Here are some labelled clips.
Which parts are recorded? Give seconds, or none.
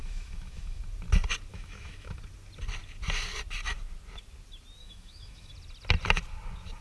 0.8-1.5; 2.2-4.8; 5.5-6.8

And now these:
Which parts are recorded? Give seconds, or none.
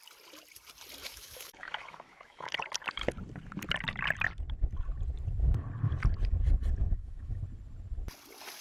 0.0-1.0; 2.5-6.8; 7.4-8.6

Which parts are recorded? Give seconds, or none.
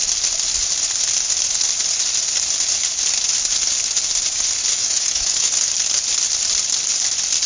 0.0-4.7; 5.5-7.5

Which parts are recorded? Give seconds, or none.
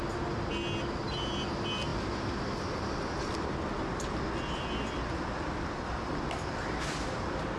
0.0-7.6